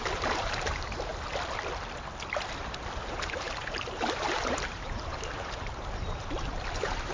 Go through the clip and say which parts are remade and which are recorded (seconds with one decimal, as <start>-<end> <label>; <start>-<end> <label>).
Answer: 0.0-1.1 remade; 1.1-3.1 recorded; 3.1-7.1 remade